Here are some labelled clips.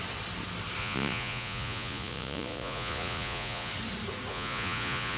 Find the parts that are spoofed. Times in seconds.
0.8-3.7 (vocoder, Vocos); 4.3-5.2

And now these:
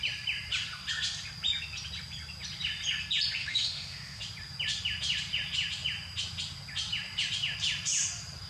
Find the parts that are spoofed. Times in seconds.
3.4-4.2 (autoencoder, DAC-VAE)

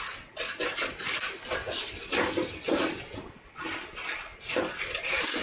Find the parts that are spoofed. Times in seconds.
4.3-5.0 (vocoder, BigVGAN v2)